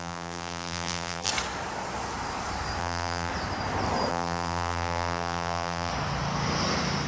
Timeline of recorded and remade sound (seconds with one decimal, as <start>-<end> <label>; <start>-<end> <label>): 0.0-1.3 remade; 1.3-2.8 recorded; 2.8-3.3 remade; 3.3-4.1 recorded; 4.1-5.9 remade; 5.9-7.1 recorded

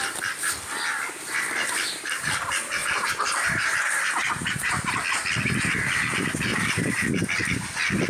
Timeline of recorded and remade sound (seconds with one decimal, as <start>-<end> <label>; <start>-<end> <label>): 0.0-2.8 recorded; 2.8-4.9 remade; 4.9-6.5 recorded; 6.5-7.2 remade; 7.2-8.1 recorded

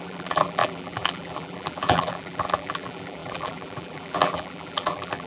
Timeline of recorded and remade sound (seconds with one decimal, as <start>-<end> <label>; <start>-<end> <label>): 0.0-5.3 remade

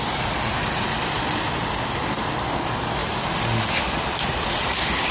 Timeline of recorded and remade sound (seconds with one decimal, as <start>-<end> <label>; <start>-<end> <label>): 0.0-5.1 recorded

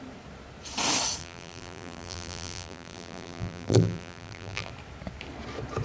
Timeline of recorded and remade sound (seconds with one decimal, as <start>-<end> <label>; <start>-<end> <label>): 0.0-1.2 recorded; 1.2-4.7 remade; 4.7-5.8 recorded

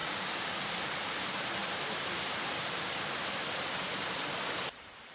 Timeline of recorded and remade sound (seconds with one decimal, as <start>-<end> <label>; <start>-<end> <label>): 0.0-1.6 recorded; 1.6-5.1 remade